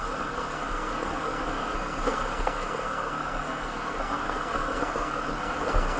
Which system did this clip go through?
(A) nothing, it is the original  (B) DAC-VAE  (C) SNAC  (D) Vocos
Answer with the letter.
C